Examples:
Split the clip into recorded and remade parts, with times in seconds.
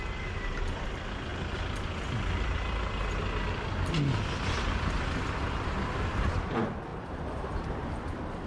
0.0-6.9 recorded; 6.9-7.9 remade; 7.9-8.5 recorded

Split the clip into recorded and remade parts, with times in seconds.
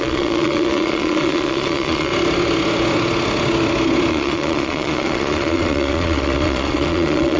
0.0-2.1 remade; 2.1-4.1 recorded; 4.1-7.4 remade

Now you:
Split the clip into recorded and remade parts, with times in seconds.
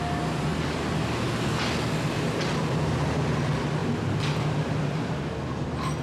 0.0-6.0 recorded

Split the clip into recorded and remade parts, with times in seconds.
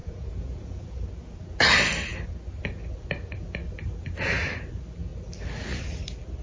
0.0-1.0 remade; 1.0-6.4 recorded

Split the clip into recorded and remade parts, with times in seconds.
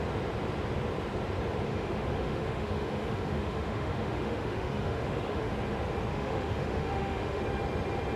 0.0-1.7 recorded; 1.7-5.5 remade; 5.5-6.1 recorded; 6.1-7.4 remade; 7.4-8.2 recorded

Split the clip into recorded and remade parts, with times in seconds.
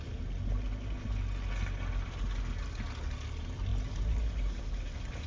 0.0-3.7 recorded; 3.7-4.6 remade; 4.6-5.3 recorded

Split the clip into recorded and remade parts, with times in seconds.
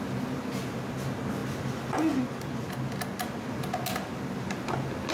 0.0-5.1 recorded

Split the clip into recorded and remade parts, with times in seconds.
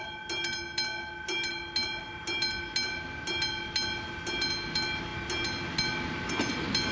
0.0-6.9 recorded